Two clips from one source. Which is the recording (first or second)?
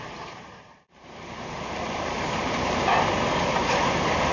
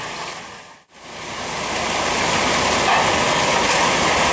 second